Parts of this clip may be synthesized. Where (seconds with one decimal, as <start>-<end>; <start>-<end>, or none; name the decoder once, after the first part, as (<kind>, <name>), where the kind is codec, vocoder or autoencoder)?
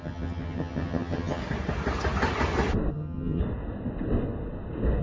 0.0-1.4 (vocoder, HiFi-GAN); 2.9-3.4